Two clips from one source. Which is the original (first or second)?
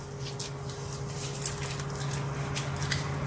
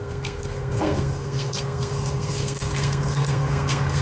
first